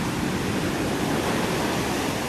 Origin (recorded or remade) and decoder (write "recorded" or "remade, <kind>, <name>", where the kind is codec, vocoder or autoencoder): recorded